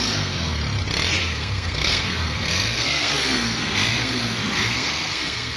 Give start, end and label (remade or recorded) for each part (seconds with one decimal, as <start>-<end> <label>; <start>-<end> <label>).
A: 0.0-0.6 remade; 0.6-1.2 recorded; 1.2-5.6 remade